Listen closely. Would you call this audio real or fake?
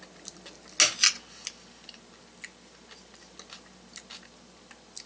real